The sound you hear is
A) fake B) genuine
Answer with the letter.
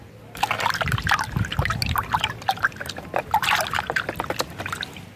B